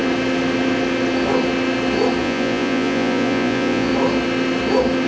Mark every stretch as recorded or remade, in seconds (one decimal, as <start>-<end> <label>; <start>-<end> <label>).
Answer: 0.0-2.2 recorded; 2.2-3.9 remade; 3.9-5.1 recorded